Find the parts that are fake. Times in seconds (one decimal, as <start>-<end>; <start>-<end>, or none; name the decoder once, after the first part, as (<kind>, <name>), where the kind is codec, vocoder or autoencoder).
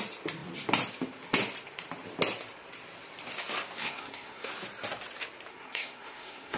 3.8-4.5 (codec, SNAC); 5.5-6.6